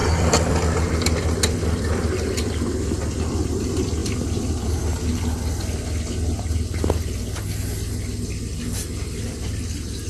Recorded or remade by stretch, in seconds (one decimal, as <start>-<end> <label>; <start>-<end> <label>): 0.0-0.9 remade; 0.9-4.0 recorded; 4.0-4.8 remade; 4.8-10.1 recorded